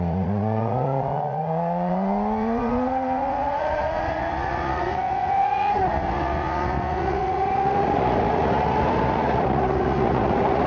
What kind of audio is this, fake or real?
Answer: fake